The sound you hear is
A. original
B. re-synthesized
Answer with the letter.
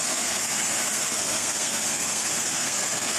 B